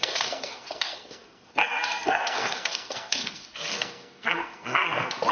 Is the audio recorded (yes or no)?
no